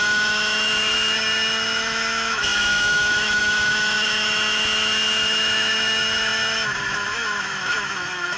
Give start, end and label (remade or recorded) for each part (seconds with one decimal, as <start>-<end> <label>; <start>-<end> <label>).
0.0-8.4 remade